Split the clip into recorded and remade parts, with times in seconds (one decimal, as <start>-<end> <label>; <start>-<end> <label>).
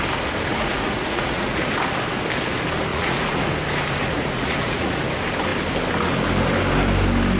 0.0-0.5 recorded; 0.5-1.7 remade; 1.7-2.9 recorded; 2.9-3.4 remade; 3.4-4.0 recorded; 4.0-5.0 remade; 5.0-7.4 recorded